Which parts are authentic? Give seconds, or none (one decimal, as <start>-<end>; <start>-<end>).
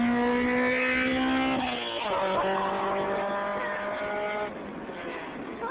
0.0-5.7